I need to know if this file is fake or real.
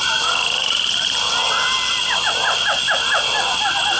real